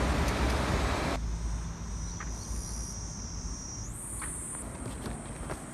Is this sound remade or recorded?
recorded